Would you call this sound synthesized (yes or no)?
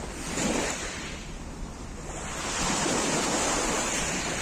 no